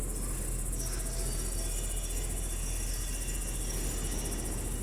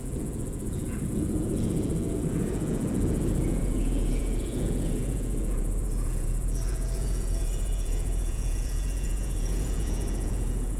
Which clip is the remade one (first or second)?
second